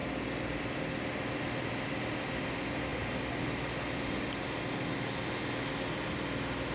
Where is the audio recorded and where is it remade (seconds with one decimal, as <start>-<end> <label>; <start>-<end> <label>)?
0.0-6.7 recorded